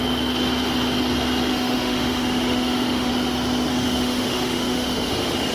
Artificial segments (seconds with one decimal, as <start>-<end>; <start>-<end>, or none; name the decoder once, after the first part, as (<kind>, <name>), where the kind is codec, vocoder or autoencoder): 1.5-3.1 (autoencoder, DAC-VAE); 3.7-5.5